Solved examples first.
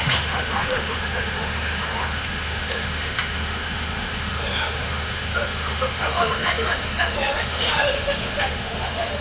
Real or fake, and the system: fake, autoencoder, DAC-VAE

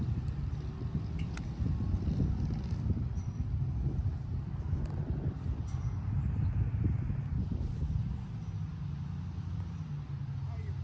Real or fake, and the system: real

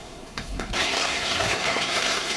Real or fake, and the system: fake, codec, SNAC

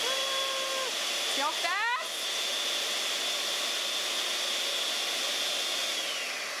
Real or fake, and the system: real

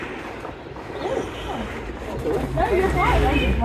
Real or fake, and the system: real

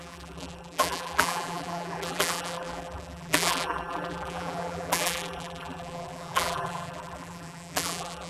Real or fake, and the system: fake, vocoder, BigVGAN v2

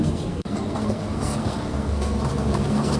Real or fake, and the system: fake, codec, SNAC